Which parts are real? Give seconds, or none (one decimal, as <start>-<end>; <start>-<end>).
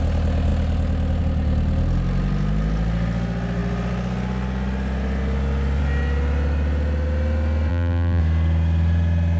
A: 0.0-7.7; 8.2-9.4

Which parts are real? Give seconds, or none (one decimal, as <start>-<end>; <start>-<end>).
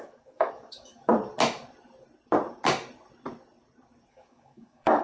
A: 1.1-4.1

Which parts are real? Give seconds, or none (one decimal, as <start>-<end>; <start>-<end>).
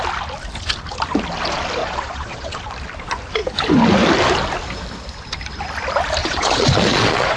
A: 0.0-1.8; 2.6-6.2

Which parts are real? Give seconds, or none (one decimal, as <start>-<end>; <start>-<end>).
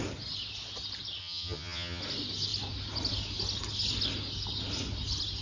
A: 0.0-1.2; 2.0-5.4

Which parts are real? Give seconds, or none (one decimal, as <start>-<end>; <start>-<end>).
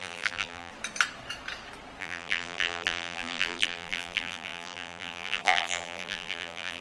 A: 0.7-2.0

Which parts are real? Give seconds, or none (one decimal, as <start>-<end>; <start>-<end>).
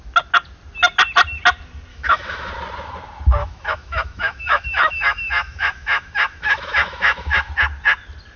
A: 0.0-1.9; 2.5-3.4; 7.5-8.4